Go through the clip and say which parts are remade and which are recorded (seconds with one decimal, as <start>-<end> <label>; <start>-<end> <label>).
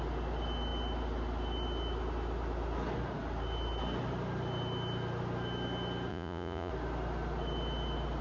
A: 0.0-6.1 recorded; 6.1-6.7 remade; 6.7-8.2 recorded